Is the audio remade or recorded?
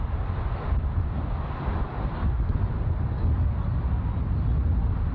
recorded